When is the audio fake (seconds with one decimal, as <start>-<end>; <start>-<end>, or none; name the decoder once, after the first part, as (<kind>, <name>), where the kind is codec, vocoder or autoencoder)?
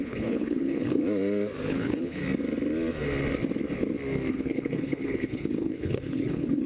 0.0-1.0 (codec, HILCodec); 1.7-2.2; 4.3-6.7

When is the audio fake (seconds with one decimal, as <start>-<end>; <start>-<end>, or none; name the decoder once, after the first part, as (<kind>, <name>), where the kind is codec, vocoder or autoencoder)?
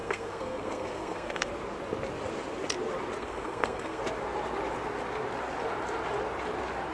0.0-1.5 (codec, SNAC); 3.2-4.0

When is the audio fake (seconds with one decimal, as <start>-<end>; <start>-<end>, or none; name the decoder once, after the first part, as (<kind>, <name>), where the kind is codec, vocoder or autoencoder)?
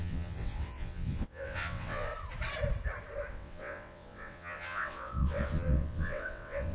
0.0-2.1 (vocoder, WaveNeXt); 3.3-6.7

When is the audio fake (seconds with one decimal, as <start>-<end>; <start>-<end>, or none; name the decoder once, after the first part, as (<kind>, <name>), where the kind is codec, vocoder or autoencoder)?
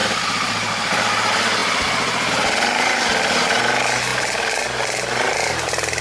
none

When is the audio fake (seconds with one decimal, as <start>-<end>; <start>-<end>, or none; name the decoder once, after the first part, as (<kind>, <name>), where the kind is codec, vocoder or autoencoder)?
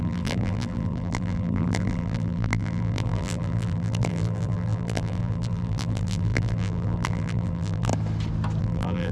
0.0-7.9 (vocoder, BigVGAN v2); 8.6-9.1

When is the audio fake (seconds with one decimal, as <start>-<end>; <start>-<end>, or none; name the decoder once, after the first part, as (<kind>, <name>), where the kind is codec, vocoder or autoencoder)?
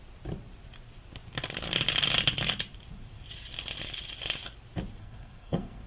5.0-5.9 (codec, SNAC)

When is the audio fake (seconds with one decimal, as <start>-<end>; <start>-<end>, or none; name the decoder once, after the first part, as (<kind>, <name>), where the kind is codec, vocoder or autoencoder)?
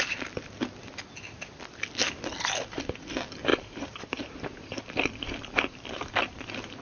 3.5-4.8 (vocoder, BigVGAN v2)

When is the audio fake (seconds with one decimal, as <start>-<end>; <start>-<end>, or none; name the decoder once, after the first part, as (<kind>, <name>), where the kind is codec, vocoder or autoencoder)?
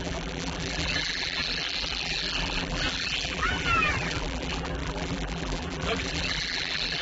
0.0-7.0 (vocoder, BigVGAN v2)